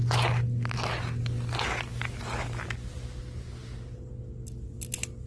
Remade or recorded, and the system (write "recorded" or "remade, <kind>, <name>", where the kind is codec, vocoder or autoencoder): recorded